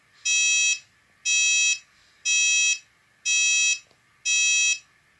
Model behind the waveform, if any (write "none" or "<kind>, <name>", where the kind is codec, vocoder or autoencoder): none